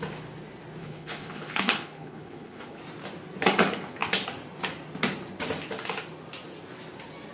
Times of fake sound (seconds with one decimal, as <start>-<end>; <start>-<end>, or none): 0.8-2.8